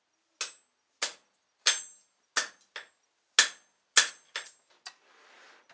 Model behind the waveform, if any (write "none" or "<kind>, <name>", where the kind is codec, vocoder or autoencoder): none